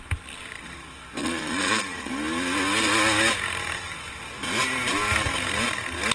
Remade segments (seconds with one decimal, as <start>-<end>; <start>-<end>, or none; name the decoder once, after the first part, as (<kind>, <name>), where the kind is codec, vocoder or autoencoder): 1.2-2.1 (vocoder, Vocos)

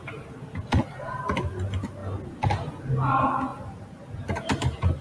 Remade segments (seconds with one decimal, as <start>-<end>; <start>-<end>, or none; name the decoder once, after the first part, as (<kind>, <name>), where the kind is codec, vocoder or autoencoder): 0.0-0.5 (vocoder, BigVGAN v2); 3.5-5.0